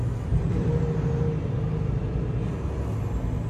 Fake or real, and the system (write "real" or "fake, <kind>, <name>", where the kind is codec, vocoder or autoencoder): real